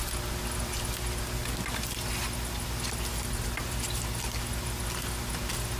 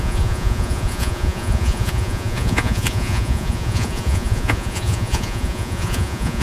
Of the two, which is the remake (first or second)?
second